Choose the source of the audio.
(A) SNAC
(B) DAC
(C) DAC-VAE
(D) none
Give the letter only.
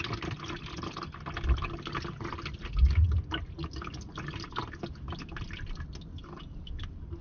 D